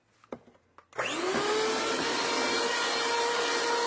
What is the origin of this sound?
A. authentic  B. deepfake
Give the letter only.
A